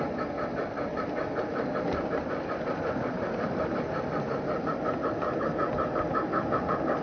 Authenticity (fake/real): real